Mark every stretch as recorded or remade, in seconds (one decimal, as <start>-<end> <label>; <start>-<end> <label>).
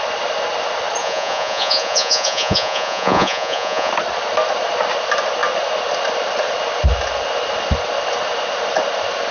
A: 0.0-1.0 recorded; 1.0-3.9 remade; 3.9-9.3 recorded